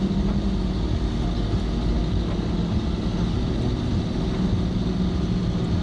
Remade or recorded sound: recorded